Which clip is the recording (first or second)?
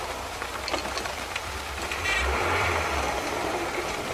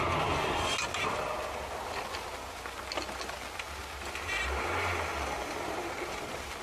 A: second